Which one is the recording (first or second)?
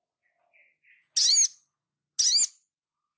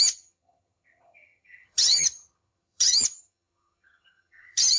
first